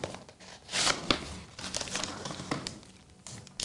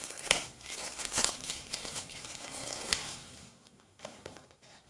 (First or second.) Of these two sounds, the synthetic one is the second